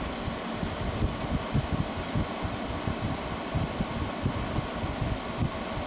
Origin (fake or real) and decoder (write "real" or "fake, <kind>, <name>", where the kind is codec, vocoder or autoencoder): real